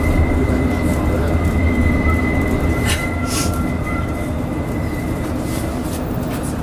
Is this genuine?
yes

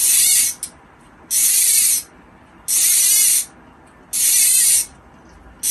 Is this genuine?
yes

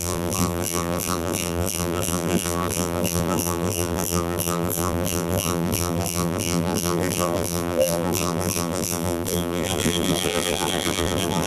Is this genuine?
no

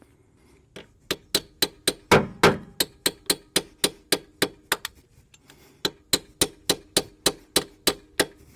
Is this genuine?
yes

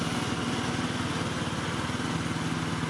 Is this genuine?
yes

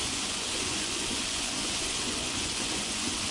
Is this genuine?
no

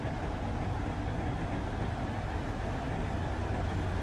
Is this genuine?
yes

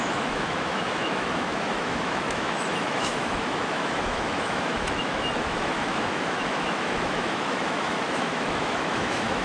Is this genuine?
no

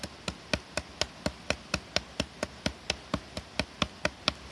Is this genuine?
yes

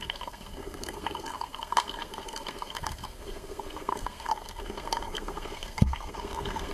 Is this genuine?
no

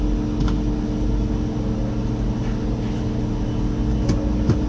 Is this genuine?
yes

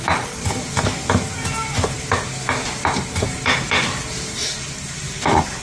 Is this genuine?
yes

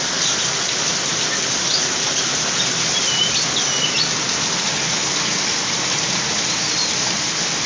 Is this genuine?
yes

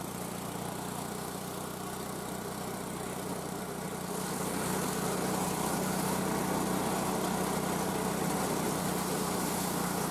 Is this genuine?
yes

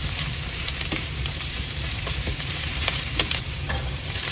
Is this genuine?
no